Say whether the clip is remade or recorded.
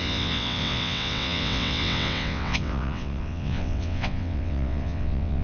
remade